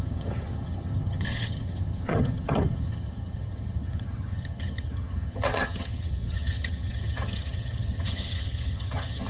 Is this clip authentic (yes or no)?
no